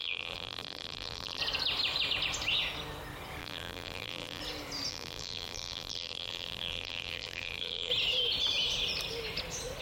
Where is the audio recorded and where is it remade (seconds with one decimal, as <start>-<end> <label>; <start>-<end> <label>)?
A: 0.0-1.4 remade; 1.4-3.4 recorded; 3.4-4.4 remade; 4.4-4.9 recorded; 4.9-7.9 remade; 7.9-9.8 recorded